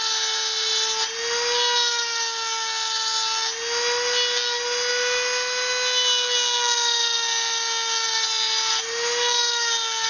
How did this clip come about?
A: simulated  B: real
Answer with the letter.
B